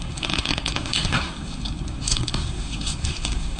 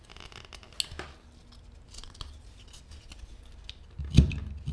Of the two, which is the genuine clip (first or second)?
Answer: second